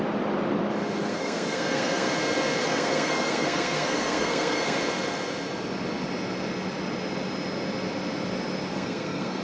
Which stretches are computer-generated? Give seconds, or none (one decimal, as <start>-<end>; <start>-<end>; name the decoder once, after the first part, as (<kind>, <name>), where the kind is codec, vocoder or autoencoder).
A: 1.0-2.1 (codec, SNAC); 2.6-4.8; 8.7-9.4